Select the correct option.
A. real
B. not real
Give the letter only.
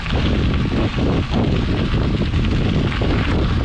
A